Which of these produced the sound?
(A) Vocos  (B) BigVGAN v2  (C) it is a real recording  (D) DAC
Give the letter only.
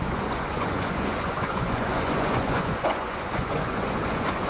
A